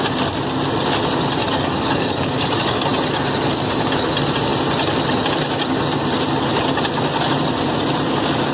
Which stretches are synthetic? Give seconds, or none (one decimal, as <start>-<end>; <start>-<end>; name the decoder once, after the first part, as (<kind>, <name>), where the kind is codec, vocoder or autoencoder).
1.4-2.8 (codec, DAC)